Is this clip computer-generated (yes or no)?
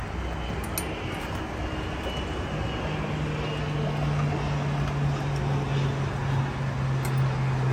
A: no